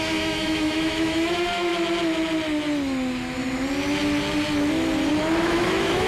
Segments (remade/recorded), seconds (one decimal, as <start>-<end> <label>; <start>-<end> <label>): 0.0-1.7 remade; 1.7-5.4 recorded; 5.4-6.1 remade